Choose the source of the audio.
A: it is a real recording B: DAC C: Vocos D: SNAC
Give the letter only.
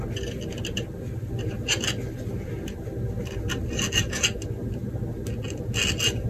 A